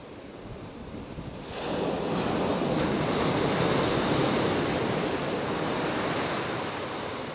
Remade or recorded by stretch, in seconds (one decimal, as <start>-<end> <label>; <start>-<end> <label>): 0.0-0.6 remade; 0.6-2.5 recorded; 2.5-7.3 remade